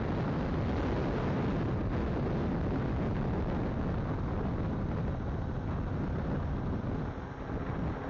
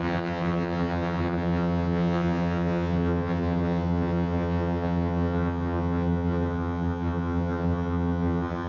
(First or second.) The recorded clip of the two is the first